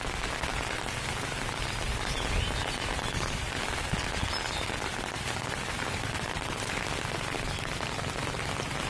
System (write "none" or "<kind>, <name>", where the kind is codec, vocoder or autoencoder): none